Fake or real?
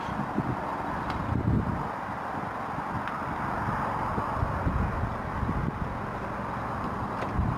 real